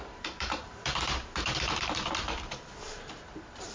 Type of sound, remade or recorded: remade